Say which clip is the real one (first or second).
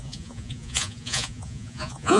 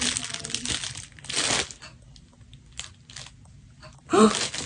second